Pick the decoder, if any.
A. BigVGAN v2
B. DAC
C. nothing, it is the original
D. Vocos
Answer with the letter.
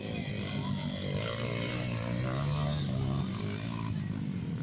C